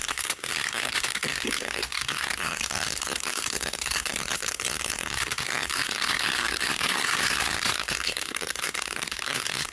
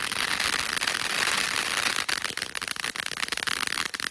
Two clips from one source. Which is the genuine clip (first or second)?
second